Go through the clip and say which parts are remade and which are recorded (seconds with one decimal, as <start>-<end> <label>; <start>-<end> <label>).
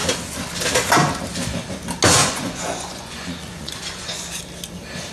0.0-2.2 recorded; 2.2-4.4 remade; 4.4-5.1 recorded